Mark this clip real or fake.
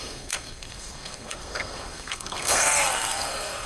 fake